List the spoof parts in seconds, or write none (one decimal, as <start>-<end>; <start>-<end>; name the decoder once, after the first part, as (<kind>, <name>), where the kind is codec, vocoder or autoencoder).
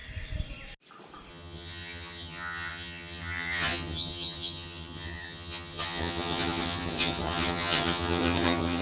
1.3-8.8 (vocoder, HiFi-GAN)